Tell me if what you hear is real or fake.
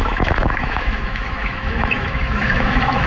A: fake